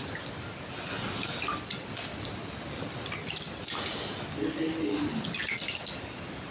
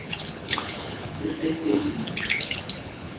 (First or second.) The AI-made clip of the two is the second